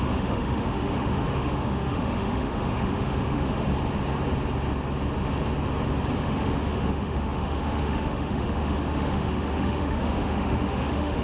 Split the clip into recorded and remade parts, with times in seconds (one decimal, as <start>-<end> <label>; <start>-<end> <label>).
0.0-3.7 remade; 3.7-6.2 recorded; 6.2-11.2 remade